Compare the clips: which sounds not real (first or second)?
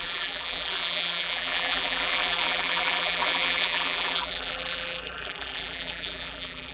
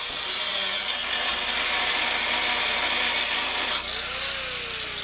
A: first